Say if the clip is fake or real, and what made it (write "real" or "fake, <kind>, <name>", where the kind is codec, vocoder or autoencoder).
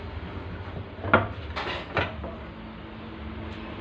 real